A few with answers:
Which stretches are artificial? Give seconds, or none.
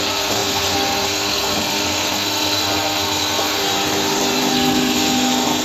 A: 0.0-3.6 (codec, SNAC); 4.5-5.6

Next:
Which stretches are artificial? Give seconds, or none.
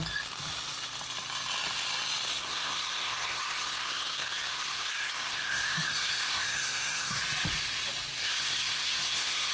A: 2.3-7.2 (codec, SNAC); 8.2-9.5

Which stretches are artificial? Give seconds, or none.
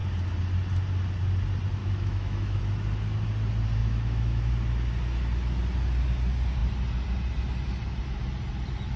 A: 1.8-2.6 (autoencoder, DAC-VAE); 3.8-4.5